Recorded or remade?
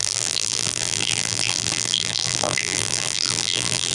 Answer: remade